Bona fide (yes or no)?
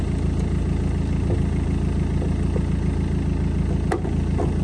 yes